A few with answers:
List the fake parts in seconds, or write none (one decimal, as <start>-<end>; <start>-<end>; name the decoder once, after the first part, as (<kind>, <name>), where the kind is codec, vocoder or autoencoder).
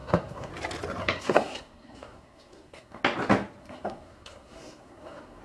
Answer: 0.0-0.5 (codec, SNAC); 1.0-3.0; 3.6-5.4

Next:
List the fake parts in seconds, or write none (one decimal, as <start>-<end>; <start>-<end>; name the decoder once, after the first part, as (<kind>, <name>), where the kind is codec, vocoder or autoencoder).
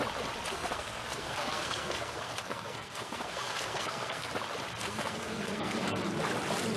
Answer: 0.5-4.3 (codec, SNAC); 4.8-6.1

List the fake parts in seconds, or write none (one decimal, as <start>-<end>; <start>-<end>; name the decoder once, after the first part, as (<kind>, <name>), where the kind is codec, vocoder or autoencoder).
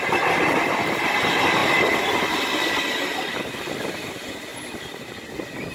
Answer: none